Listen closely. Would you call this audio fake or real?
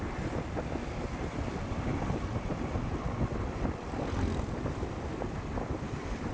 real